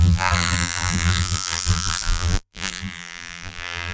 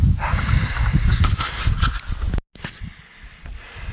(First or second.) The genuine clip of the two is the second